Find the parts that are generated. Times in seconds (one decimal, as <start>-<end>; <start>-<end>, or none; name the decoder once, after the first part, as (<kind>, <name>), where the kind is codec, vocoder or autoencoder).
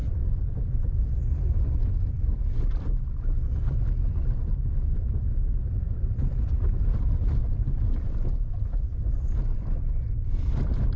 0.0-2.1 (vocoder, BigVGAN v2)